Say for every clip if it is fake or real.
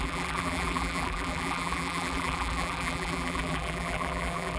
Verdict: fake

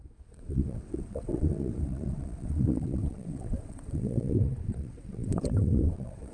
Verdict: fake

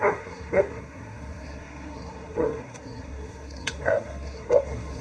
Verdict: fake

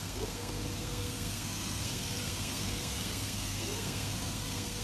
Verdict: fake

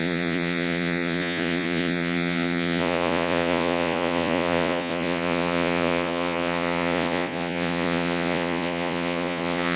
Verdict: fake